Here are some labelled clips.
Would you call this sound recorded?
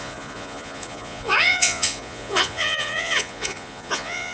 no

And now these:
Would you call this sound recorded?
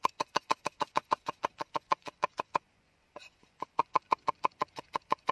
no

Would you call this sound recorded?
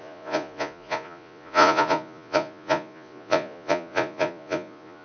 no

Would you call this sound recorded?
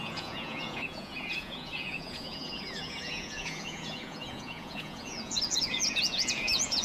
no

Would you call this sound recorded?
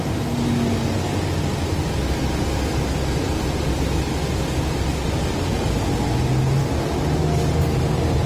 yes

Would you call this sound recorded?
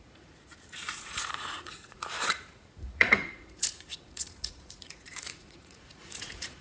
no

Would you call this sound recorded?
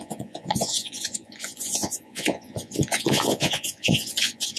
no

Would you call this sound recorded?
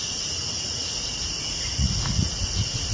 no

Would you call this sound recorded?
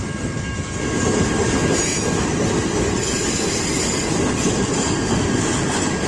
yes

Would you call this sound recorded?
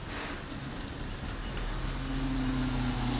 yes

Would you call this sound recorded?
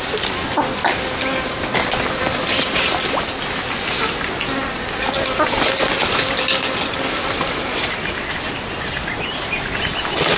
yes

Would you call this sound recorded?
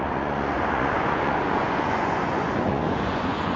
no